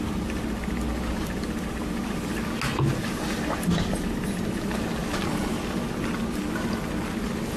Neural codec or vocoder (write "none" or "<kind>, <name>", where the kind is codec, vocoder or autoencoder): none